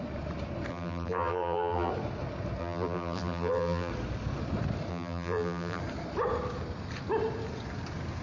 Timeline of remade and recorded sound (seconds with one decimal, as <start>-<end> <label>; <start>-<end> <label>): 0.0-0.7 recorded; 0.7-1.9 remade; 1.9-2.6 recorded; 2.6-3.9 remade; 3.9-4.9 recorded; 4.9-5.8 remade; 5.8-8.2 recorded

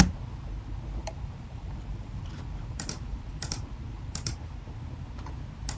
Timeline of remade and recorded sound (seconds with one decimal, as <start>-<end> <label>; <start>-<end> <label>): 0.0-1.0 recorded; 1.0-4.5 remade; 4.5-5.8 recorded

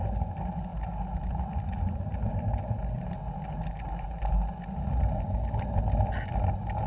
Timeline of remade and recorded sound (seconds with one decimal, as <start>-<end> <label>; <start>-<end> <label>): 0.0-6.9 recorded

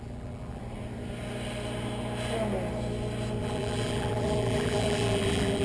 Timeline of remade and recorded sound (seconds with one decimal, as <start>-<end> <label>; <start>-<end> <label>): 0.0-0.6 remade; 0.6-3.4 recorded; 3.4-5.6 remade

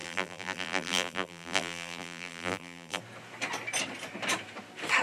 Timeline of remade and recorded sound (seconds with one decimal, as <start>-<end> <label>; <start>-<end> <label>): 0.0-3.0 remade; 3.0-5.0 recorded

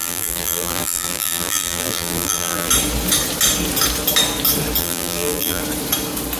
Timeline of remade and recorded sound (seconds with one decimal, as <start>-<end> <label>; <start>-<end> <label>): 0.0-2.7 remade; 2.7-4.8 recorded; 4.8-5.6 remade; 5.6-6.4 recorded

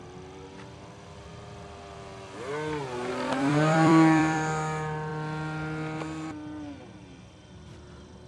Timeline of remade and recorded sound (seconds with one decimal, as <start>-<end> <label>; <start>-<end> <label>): 0.0-2.1 remade; 2.1-3.1 recorded; 3.1-5.1 remade; 5.1-6.0 recorded; 6.0-8.3 remade